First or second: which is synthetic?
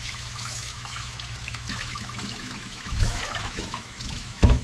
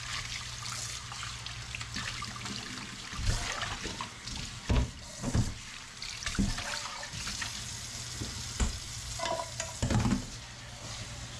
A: first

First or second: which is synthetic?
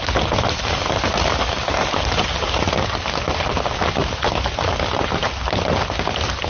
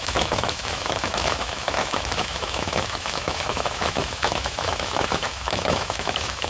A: second